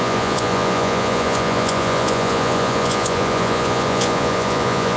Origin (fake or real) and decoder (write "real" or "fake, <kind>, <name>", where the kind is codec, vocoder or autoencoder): fake, vocoder, Vocos